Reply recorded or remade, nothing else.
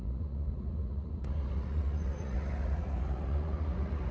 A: remade